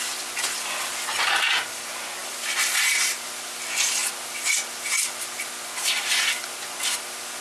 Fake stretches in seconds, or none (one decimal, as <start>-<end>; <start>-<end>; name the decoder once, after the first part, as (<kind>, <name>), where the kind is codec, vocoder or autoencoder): none